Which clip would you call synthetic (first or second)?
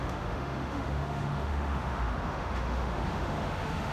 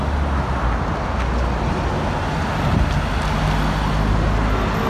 first